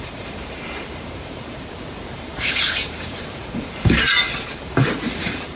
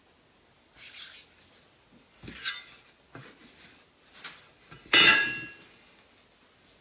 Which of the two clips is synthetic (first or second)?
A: first